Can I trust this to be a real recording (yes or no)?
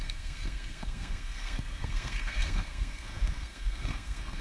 no